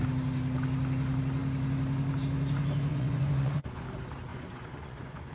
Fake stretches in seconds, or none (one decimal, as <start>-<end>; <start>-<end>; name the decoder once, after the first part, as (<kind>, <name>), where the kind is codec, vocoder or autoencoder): 2.9-3.8 (vocoder, Vocos); 4.3-5.3